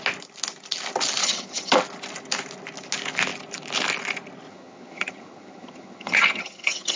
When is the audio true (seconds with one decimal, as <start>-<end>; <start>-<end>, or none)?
0.0-1.2; 1.7-4.5

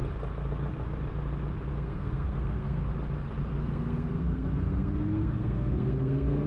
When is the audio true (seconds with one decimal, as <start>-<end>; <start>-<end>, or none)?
0.0-1.7; 2.8-3.6

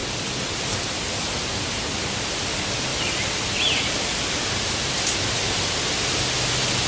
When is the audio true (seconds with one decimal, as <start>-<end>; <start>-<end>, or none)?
1.5-6.9